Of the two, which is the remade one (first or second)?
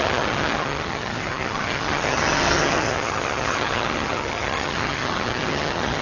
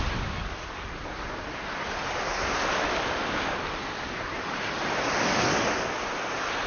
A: first